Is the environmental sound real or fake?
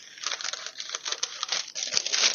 real